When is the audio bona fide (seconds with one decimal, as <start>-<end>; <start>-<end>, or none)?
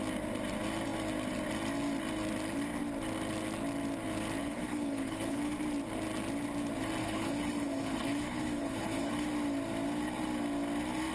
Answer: 0.0-4.4; 5.4-7.0; 9.1-11.1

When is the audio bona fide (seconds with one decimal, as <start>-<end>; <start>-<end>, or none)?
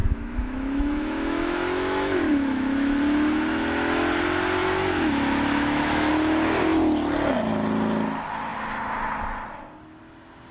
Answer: 3.0-4.6; 6.1-10.5